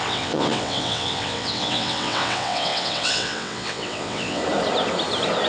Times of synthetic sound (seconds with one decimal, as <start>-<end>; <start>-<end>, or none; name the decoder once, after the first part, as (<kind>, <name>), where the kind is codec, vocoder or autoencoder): 0.0-4.4 (vocoder, WaveNeXt)